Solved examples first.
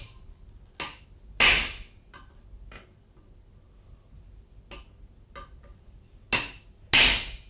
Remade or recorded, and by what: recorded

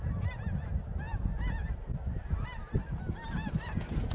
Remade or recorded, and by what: recorded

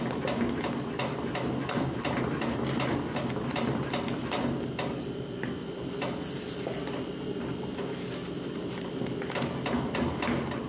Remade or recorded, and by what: recorded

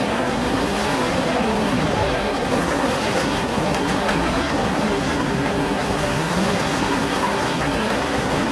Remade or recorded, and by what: remade, codec, SNAC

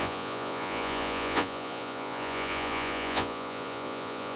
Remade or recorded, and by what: remade, vocoder, Vocos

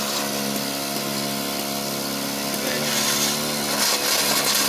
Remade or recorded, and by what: recorded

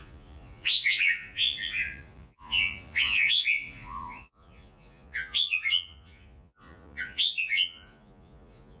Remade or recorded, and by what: remade, vocoder, Vocos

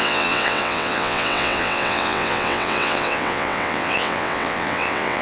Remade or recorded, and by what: remade, vocoder, WaveNeXt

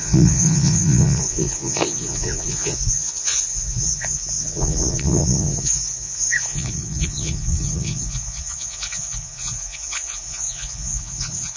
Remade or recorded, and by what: remade, vocoder, Vocos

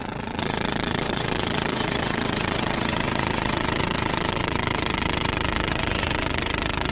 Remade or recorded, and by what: remade, vocoder, WaveNeXt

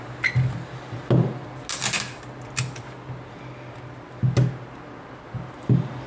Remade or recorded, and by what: recorded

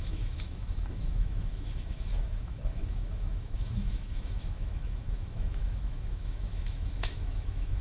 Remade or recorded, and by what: remade, autoencoder, DAC-VAE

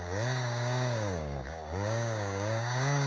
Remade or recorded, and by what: remade, codec, DAC